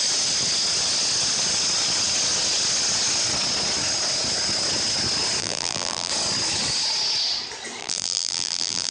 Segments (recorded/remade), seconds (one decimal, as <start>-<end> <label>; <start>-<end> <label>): 0.0-5.4 recorded; 5.4-6.1 remade; 6.1-7.8 recorded; 7.8-8.9 remade